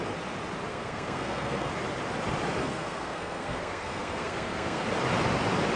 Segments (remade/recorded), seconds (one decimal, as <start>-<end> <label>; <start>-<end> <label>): 0.0-0.7 recorded; 0.7-1.7 remade; 1.7-2.6 recorded; 2.6-4.8 remade; 4.8-5.8 recorded